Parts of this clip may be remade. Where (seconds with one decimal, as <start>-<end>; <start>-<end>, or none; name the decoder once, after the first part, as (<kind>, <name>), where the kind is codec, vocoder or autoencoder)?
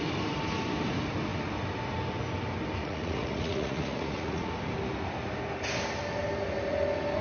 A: 2.8-4.5 (vocoder, Vocos)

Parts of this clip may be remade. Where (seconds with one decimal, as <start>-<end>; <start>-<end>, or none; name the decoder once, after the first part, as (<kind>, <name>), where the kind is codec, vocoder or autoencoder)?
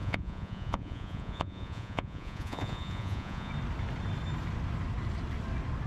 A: 0.0-3.5 (vocoder, Vocos)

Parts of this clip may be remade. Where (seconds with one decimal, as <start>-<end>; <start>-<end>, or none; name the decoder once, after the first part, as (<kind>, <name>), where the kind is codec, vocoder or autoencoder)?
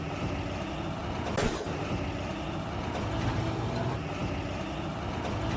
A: none